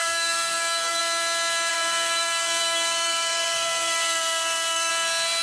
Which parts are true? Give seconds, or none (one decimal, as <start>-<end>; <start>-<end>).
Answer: 1.0-1.7; 4.9-5.4